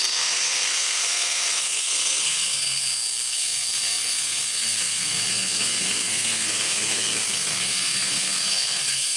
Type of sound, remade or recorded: remade